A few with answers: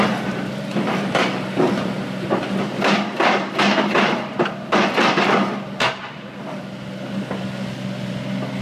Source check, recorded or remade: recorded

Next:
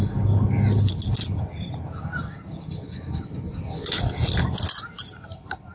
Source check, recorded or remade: recorded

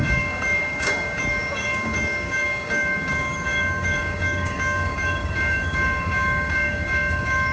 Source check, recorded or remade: remade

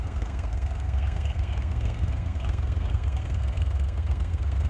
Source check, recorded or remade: remade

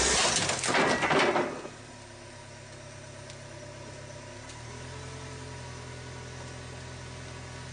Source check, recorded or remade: recorded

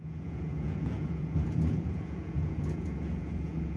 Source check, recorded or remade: remade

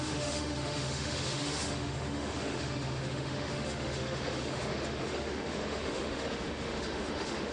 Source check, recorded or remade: remade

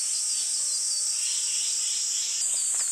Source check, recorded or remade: recorded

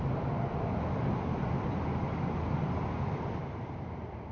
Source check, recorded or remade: recorded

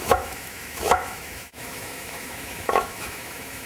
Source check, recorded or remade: remade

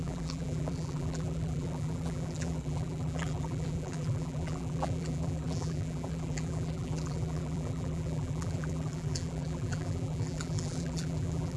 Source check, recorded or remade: remade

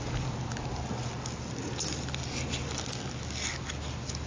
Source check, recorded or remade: recorded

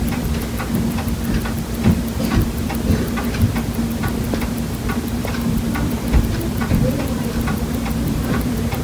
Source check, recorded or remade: remade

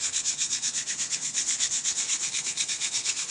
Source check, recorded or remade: remade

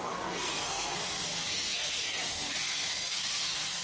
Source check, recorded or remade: remade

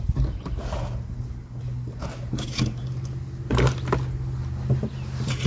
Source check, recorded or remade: recorded